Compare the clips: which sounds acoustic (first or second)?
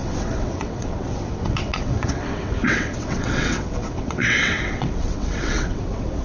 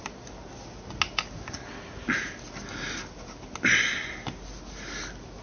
second